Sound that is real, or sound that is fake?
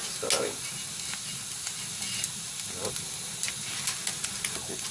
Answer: real